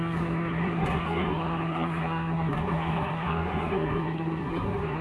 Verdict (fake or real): fake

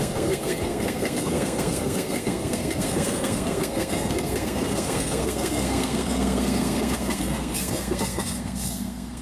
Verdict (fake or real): fake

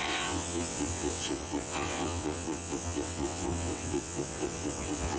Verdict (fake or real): fake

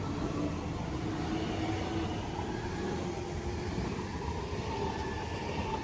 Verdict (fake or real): real